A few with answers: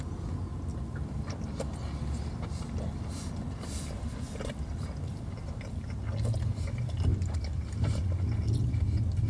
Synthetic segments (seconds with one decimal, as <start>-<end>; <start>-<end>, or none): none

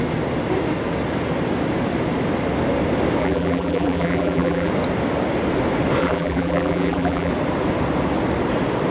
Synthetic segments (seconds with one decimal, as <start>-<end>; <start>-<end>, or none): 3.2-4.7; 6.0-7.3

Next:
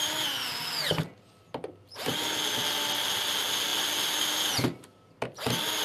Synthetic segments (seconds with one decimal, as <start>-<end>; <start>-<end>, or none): none

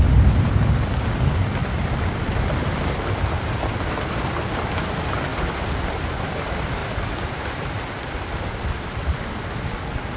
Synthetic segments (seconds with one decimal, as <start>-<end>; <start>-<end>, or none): 1.6-3.6; 5.3-5.9; 6.8-9.3

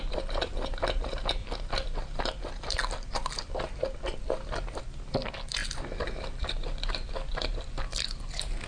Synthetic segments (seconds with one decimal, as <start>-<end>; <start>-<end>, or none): 1.4-4.8; 5.6-6.9

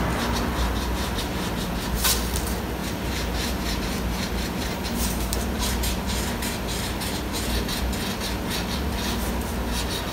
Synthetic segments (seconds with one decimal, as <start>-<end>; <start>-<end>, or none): 2.8-7.8